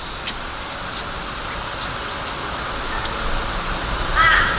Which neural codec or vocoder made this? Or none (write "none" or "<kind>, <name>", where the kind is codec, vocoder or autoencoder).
none